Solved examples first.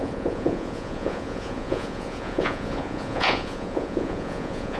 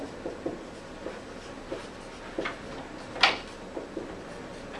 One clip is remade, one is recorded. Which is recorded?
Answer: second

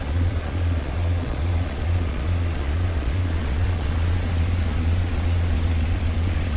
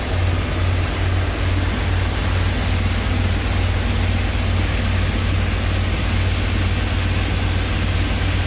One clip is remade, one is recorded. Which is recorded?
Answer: second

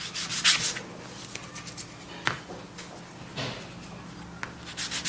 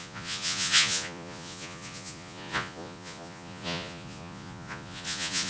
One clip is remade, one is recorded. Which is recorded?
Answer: first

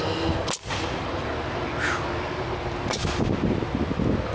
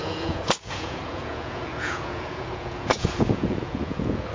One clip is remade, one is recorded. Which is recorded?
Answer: first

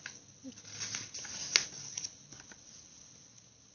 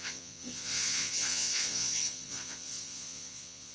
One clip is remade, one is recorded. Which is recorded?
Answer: first